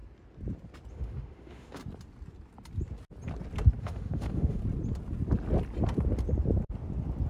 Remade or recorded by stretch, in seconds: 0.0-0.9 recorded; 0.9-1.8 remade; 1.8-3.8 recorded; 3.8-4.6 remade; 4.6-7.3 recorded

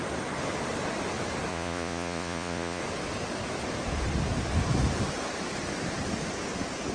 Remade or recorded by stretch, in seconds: 0.0-1.5 recorded; 1.5-2.8 remade; 2.8-6.9 recorded